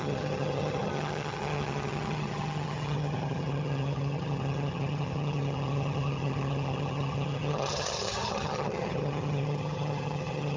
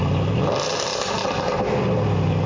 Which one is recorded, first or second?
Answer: second